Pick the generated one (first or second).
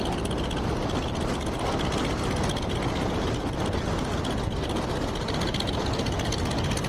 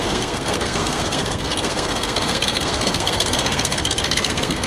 second